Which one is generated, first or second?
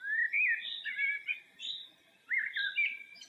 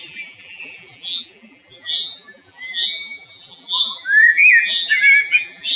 second